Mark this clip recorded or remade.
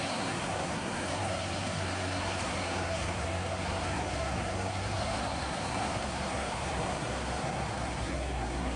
remade